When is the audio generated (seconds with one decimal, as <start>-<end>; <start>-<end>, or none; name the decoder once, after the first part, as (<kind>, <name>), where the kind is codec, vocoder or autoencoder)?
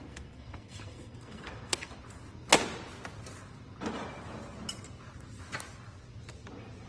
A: 0.0-1.9 (codec, SNAC)